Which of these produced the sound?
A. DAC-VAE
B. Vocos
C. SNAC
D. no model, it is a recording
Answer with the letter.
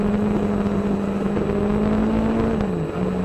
D